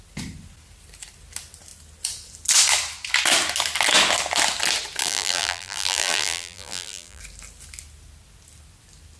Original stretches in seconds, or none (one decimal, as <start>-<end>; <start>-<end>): 0.0-5.0; 7.2-9.2